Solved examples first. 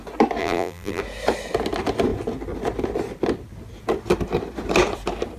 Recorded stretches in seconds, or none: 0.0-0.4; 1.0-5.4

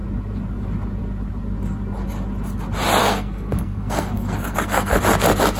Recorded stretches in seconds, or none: 0.0-3.0; 5.0-5.6

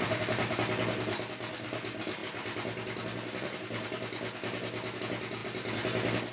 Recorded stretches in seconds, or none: 0.0-6.3

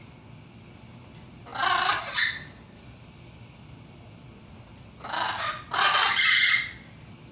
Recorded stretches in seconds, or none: 0.0-7.3

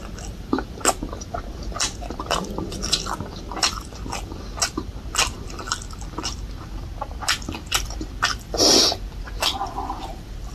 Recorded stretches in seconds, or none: 6.9-8.8

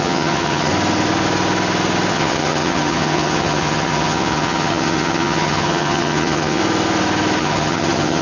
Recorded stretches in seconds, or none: 0.7-2.1; 6.6-7.4

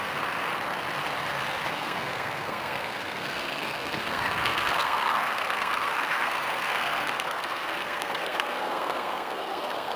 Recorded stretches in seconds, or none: 0.5-1.7

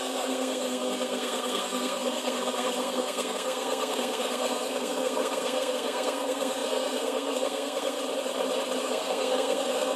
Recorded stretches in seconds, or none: 8.0-8.8